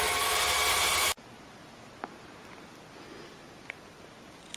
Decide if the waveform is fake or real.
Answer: real